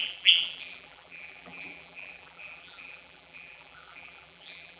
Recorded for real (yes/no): no